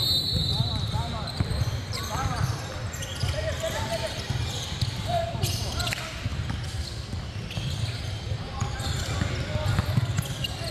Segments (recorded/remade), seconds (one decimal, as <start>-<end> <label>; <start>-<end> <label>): 0.0-1.5 recorded; 1.5-5.6 remade; 5.6-10.7 recorded